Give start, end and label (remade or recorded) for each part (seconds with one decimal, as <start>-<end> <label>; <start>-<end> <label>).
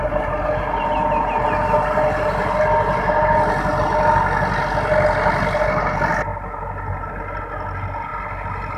0.0-6.3 recorded; 6.3-7.4 remade; 7.4-8.1 recorded; 8.1-8.8 remade